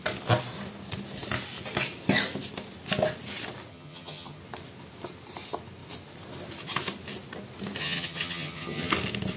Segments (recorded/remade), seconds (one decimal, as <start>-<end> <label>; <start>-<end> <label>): 0.0-3.7 recorded; 3.7-4.4 remade; 4.4-7.8 recorded; 7.8-8.9 remade; 8.9-9.4 recorded